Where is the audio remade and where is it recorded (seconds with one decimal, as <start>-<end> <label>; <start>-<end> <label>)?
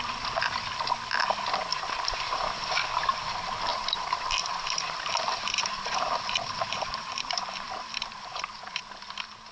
0.0-1.7 recorded; 1.7-2.4 remade; 2.4-3.7 recorded; 3.7-8.8 remade; 8.8-9.5 recorded